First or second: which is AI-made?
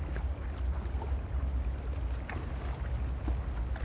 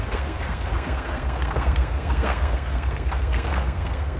second